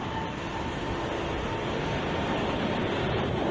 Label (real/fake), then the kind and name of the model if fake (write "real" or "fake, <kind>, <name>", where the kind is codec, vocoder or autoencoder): real